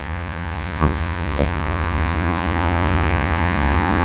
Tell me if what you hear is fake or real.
fake